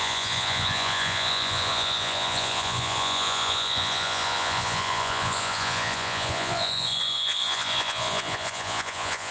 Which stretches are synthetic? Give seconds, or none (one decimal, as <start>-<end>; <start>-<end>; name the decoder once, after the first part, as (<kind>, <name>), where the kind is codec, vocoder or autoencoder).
0.0-9.3 (vocoder, Vocos)